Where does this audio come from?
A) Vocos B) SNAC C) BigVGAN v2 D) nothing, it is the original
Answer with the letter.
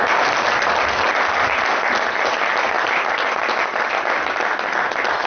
D